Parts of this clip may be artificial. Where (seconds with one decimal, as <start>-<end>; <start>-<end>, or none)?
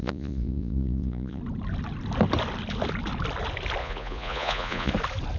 0.0-1.4; 3.8-4.9